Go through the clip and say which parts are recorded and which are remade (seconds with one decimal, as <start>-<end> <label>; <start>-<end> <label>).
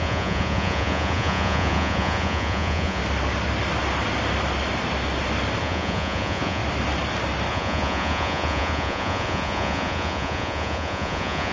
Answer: 0.0-3.0 remade; 3.0-5.6 recorded; 5.6-6.6 remade; 6.6-7.5 recorded; 7.5-11.5 remade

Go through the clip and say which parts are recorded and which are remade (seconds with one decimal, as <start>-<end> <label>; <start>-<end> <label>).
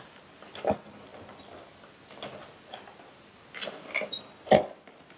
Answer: 0.0-5.2 recorded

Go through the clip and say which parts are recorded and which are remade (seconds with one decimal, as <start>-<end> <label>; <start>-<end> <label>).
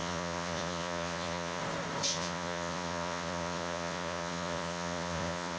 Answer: 0.0-1.6 remade; 1.6-2.1 recorded; 2.1-5.6 remade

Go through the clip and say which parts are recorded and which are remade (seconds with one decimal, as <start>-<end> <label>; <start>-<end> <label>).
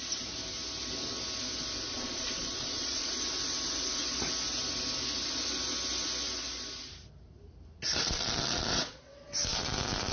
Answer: 0.0-1.9 recorded; 1.9-3.1 remade; 3.1-8.7 recorded; 8.7-9.3 remade; 9.3-10.1 recorded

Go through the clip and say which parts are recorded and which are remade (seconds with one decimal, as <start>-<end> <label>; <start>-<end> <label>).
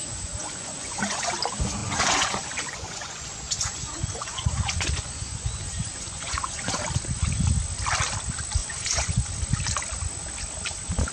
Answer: 0.0-1.3 remade; 1.3-1.8 recorded; 1.8-6.8 remade; 6.8-8.6 recorded; 8.6-9.3 remade; 9.3-11.1 recorded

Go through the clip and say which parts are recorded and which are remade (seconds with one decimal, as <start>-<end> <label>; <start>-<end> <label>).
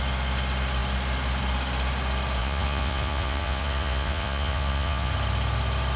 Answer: 0.0-2.4 recorded; 2.4-5.1 remade; 5.1-6.0 recorded